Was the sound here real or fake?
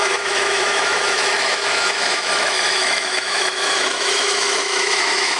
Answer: fake